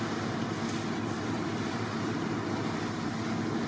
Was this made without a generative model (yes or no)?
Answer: yes